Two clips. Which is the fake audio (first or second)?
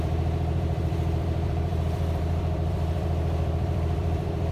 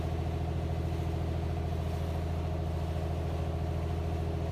first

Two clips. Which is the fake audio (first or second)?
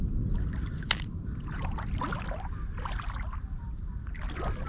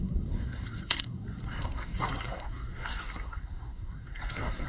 second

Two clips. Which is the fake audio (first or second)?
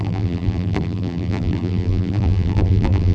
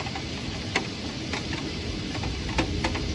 first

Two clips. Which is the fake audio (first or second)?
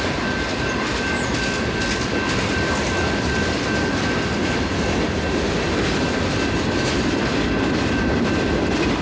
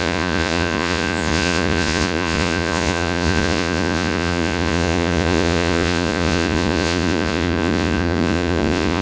second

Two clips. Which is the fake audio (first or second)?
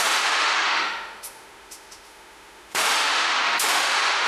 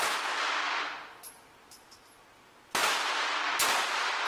first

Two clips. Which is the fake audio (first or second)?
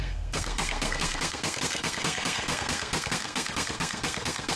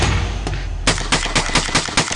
first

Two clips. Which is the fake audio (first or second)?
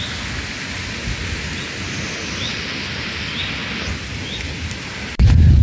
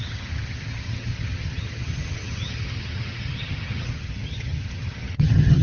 second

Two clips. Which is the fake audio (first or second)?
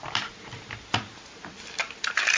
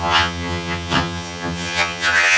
second